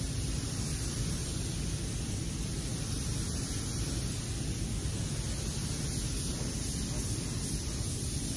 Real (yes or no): yes